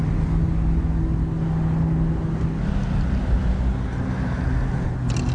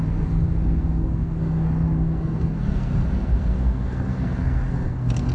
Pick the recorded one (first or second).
first